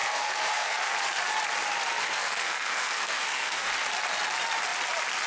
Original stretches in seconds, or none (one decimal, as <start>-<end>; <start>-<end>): 0.9-1.9; 3.7-5.3

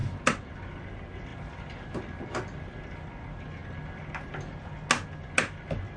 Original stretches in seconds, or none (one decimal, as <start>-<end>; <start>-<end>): 0.5-1.3; 2.8-6.0

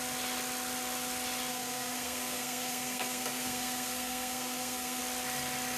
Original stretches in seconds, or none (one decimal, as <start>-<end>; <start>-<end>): 0.0-1.5; 5.0-5.8

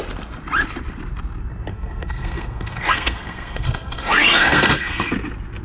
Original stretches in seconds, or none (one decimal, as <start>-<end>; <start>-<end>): 0.0-1.7; 5.1-5.6

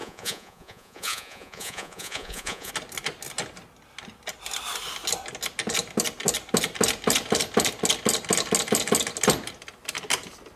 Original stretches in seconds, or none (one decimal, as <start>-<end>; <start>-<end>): 2.7-10.6

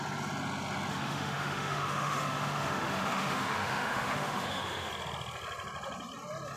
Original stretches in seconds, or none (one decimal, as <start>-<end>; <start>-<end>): 0.0-0.9; 4.9-6.6